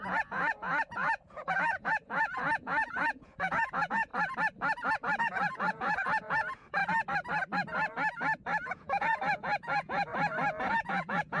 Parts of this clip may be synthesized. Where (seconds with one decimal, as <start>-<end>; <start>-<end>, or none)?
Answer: 0.0-4.1; 5.2-6.8; 8.7-10.1; 10.7-11.4